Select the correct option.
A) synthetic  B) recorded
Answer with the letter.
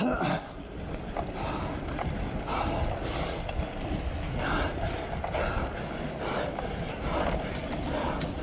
B